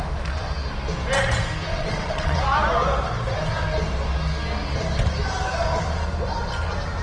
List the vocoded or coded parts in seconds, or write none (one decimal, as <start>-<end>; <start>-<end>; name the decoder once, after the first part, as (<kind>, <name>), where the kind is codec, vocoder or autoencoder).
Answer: 1.7-2.4 (vocoder, WaveNeXt)